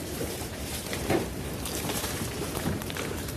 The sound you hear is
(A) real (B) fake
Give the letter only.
B